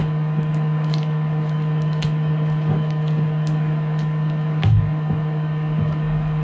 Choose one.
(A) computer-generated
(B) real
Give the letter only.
A